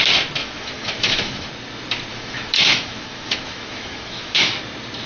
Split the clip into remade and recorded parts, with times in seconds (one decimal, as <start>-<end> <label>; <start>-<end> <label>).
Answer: 0.0-0.4 recorded; 0.4-1.5 remade; 1.5-2.1 recorded; 2.1-4.5 remade; 4.5-5.1 recorded